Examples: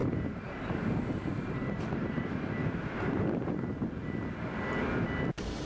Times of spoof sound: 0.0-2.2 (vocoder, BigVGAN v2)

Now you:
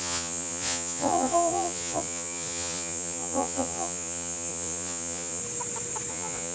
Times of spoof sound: 0.0-5.4 (vocoder, Vocos); 6.1-6.5

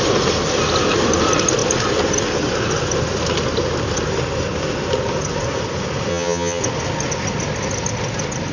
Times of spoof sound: 6.1-6.6 (vocoder, HiFi-GAN)

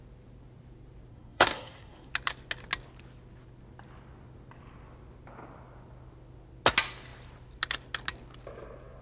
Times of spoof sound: 1.1-2.1 (codec, SNAC)